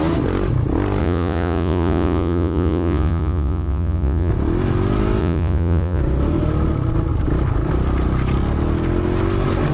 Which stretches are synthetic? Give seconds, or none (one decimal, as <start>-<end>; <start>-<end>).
1.0-4.3; 5.2-6.0